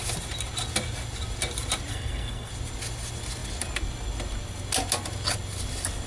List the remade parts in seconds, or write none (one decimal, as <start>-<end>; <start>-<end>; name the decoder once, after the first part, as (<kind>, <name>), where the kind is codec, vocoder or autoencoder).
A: 1.9-2.5 (codec, SNAC)